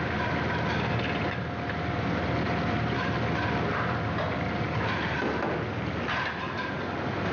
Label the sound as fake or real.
real